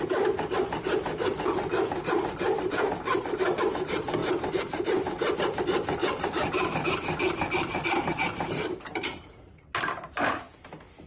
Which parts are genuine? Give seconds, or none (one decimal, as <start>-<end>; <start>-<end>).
0.0-4.2; 5.6-6.0; 10.3-11.1